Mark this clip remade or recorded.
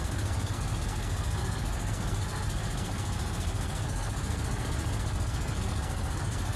remade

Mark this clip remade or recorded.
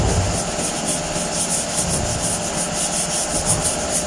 recorded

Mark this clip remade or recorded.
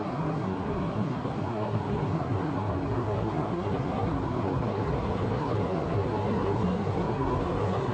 remade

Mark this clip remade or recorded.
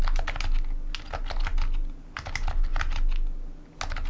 recorded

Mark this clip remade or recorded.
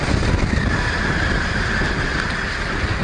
recorded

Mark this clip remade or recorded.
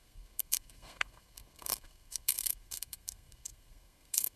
remade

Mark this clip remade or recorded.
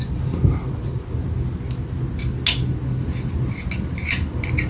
recorded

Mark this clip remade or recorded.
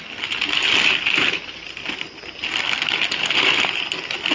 recorded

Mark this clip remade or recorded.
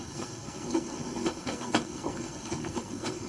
remade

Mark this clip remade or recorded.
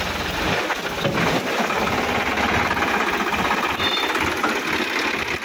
recorded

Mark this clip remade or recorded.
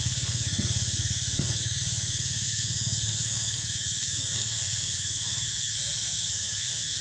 remade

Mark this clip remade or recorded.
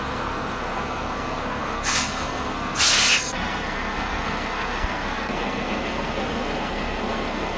remade